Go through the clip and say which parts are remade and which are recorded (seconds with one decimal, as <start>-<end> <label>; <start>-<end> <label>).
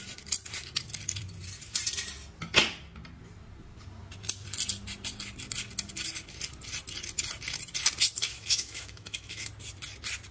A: 0.0-8.2 recorded; 8.2-9.5 remade; 9.5-10.3 recorded